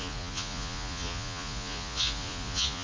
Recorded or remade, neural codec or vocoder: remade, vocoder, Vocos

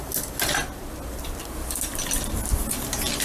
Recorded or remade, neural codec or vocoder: recorded